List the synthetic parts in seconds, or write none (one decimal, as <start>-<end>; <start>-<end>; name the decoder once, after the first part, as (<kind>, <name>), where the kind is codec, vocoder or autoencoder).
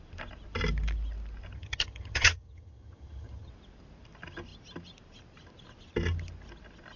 1.5-3.5 (vocoder, HiFi-GAN)